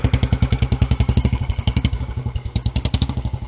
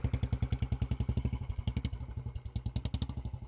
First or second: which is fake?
first